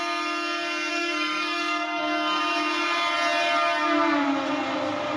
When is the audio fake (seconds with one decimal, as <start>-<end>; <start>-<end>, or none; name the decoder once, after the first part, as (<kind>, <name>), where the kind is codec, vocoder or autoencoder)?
0.9-2.4 (codec, SNAC)